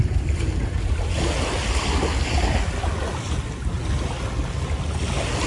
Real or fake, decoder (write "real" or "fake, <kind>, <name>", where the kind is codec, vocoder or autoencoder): real